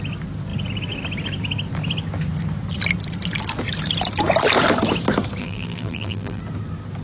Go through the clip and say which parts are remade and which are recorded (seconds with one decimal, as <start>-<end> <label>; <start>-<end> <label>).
0.0-5.4 recorded; 5.4-6.4 remade; 6.4-7.0 recorded